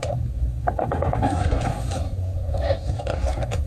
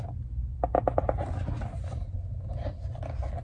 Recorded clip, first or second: second